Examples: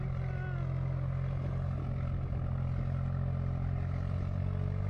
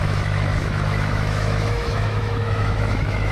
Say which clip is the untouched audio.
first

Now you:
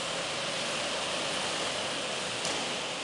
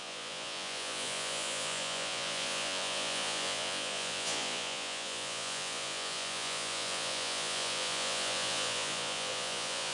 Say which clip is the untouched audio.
first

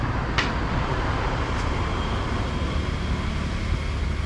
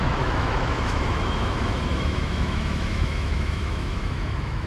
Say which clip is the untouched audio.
first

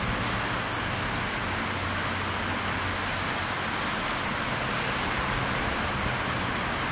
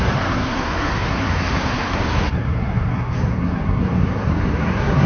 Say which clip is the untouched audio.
first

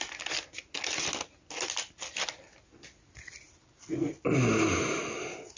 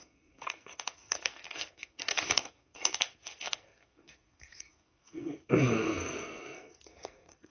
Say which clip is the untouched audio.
first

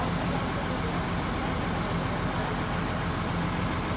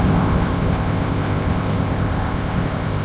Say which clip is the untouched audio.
first